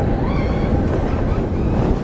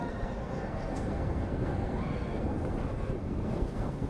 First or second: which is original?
first